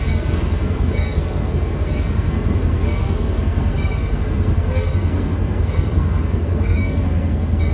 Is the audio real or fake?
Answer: fake